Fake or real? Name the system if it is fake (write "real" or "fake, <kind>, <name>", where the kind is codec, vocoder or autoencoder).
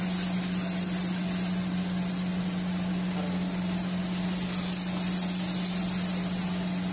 real